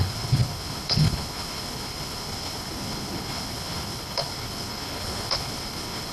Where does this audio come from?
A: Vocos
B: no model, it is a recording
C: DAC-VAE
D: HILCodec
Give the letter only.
D